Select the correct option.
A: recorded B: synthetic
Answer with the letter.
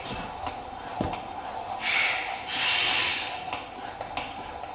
A